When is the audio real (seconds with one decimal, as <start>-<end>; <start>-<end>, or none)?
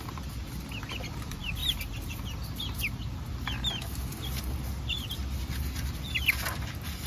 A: 0.0-7.1